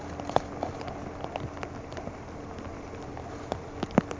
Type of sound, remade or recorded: recorded